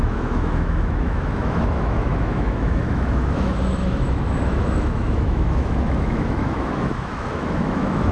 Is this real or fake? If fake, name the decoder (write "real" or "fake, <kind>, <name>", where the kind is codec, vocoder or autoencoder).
fake, autoencoder, DAC-VAE